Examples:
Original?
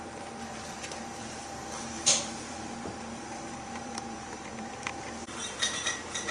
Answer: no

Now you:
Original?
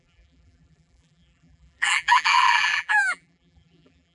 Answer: no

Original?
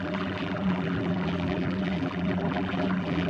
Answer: no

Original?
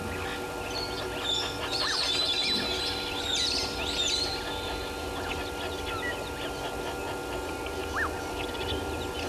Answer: yes